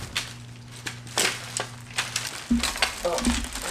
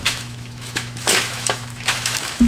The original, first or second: first